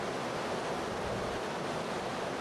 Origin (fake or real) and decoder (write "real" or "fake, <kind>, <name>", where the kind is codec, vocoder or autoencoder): real